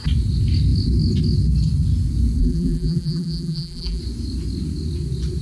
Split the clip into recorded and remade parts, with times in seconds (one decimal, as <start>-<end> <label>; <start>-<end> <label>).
0.0-2.4 recorded; 2.4-4.0 remade; 4.0-5.4 recorded